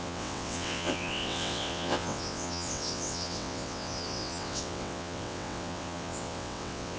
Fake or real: fake